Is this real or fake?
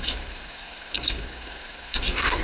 fake